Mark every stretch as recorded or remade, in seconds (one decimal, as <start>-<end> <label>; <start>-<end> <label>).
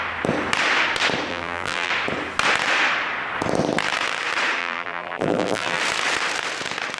0.0-1.3 recorded; 1.3-1.9 remade; 1.9-4.6 recorded; 4.6-5.8 remade; 5.8-7.0 recorded